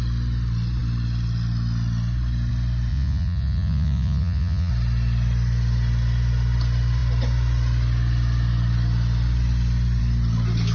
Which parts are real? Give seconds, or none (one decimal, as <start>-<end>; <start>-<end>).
0.0-2.9; 4.7-10.7